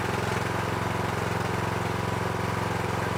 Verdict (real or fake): real